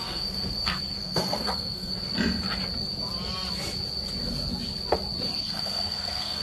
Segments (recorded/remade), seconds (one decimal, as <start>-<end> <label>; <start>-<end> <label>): 0.0-1.9 remade; 1.9-5.4 recorded; 5.4-6.4 remade